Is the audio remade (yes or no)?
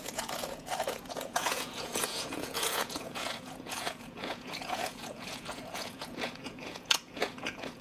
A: yes